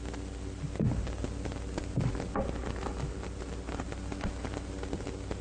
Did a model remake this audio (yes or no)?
no